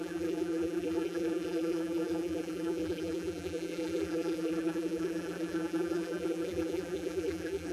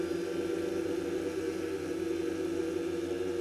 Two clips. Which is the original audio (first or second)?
second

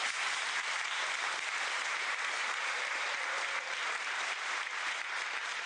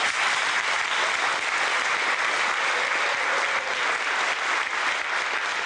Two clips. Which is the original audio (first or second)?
second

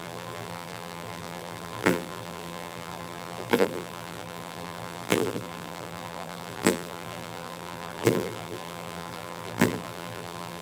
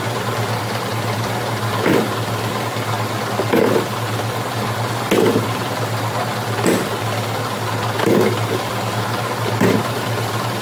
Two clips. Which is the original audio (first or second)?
second